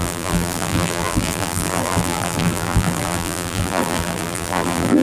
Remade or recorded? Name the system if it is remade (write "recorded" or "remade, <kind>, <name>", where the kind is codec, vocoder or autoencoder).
remade, vocoder, BigVGAN v2